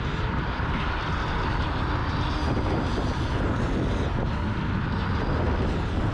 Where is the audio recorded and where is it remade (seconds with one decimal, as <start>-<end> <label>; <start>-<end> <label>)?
0.0-6.1 recorded